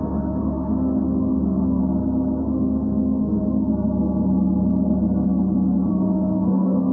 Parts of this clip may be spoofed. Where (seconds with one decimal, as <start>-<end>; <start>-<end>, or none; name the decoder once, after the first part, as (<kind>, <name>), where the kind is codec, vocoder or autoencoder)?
0.0-1.8 (autoencoder, DAC-VAE); 2.4-3.7; 5.9-6.9